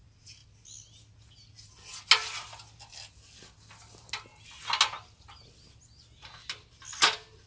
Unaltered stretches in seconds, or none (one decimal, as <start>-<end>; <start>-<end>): 0.0-7.5